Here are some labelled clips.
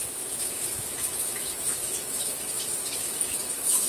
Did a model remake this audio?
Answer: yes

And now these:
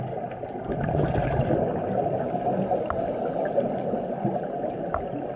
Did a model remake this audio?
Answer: no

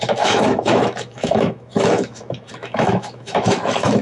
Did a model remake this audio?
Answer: yes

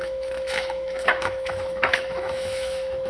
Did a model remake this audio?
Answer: yes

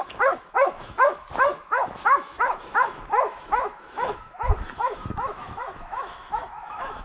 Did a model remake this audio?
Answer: yes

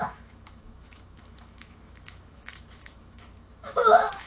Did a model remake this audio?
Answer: yes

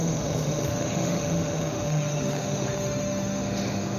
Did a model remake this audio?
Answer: yes